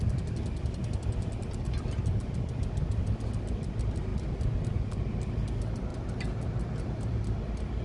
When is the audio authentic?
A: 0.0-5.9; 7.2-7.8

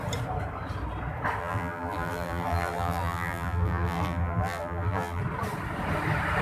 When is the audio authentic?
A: 0.0-1.4; 5.2-6.4